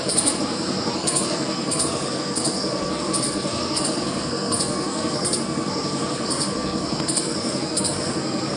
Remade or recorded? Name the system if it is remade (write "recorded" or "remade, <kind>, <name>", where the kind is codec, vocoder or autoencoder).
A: remade, codec, SNAC